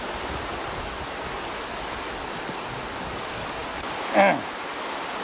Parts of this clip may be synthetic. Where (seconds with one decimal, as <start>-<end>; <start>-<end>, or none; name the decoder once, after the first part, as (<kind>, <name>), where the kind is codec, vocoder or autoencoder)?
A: none